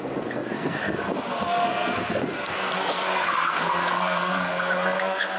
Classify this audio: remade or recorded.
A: remade